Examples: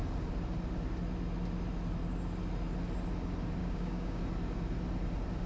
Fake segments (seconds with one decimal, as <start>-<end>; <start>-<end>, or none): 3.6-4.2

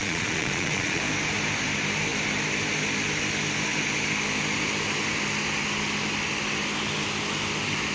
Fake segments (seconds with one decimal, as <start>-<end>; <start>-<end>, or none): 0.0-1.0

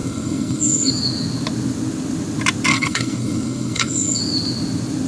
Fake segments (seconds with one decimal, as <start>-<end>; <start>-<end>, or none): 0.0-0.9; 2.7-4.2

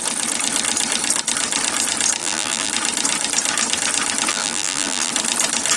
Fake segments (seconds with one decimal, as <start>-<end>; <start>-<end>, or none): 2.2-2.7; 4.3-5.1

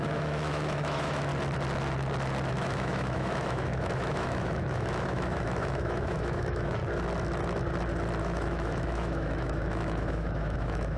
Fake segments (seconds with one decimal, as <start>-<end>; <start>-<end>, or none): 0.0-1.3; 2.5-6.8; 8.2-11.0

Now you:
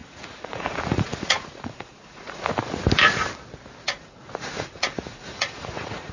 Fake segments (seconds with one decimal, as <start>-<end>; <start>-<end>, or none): 0.0-2.9; 3.8-6.1

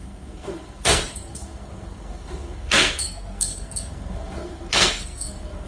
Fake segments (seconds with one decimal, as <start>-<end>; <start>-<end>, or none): 0.0-5.7